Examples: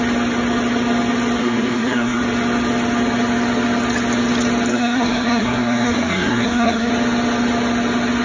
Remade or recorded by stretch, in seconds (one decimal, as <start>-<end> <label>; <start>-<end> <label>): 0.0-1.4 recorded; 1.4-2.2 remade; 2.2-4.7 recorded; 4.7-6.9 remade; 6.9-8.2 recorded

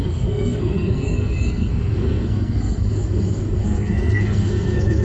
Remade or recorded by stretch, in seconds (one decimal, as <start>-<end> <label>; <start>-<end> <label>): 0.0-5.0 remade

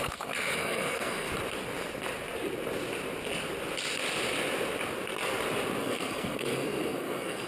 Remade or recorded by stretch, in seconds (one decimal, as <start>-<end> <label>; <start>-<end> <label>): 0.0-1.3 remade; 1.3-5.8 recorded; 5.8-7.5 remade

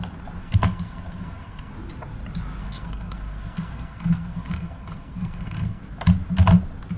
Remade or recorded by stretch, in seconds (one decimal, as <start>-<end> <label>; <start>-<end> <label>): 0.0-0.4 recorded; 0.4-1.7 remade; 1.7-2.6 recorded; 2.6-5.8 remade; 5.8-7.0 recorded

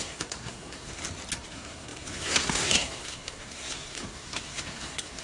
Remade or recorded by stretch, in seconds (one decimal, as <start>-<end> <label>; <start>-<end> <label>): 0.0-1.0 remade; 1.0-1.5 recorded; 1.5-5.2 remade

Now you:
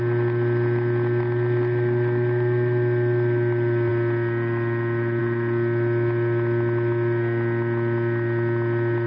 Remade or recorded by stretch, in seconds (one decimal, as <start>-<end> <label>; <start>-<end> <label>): 0.0-9.1 recorded